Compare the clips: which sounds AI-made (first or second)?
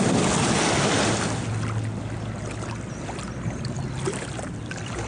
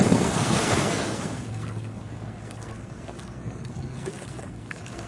second